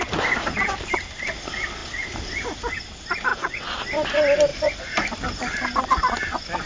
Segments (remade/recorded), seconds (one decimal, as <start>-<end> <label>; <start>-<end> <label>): 0.0-3.3 recorded; 3.3-3.8 remade; 3.8-6.7 recorded